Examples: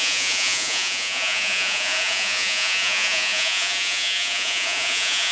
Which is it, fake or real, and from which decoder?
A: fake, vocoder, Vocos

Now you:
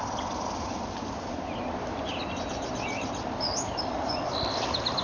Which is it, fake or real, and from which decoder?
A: real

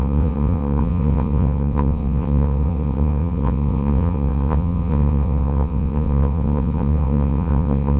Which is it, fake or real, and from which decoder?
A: fake, vocoder, WaveNeXt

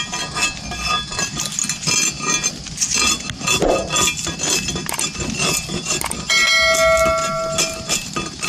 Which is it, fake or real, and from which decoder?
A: real